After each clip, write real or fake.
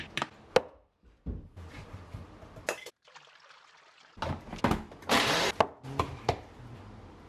real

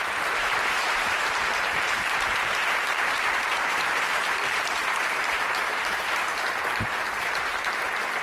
fake